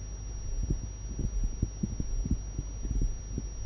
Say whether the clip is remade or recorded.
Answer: recorded